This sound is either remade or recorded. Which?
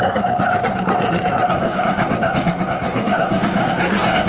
remade